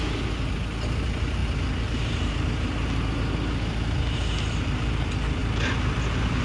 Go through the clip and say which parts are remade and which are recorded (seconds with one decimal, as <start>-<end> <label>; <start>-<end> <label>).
0.0-6.4 recorded